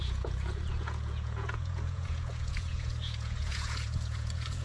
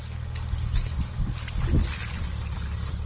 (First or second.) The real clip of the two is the second